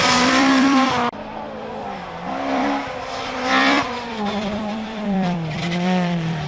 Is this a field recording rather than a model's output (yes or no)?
no